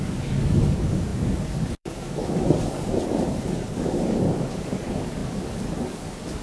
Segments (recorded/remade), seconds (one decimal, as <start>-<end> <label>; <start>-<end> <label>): 0.0-6.4 remade